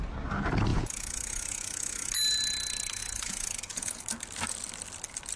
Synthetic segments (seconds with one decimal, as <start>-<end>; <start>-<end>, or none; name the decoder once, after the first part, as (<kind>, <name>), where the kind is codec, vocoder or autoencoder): 0.7-2.1 (vocoder, Vocos); 3.0-4.0